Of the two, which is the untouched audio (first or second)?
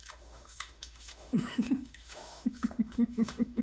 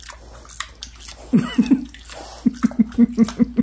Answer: second